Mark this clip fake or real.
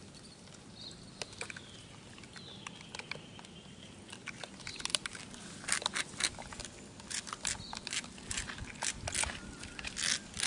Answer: real